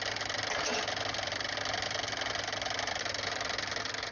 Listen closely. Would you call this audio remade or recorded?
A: recorded